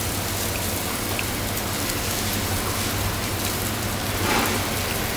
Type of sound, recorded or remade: remade